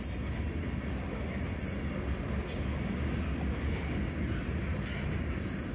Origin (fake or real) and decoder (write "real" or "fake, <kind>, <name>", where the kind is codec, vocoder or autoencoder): real